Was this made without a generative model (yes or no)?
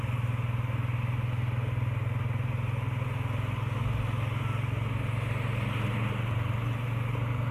yes